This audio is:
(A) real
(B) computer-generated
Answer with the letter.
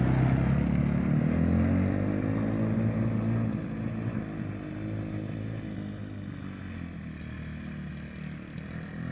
A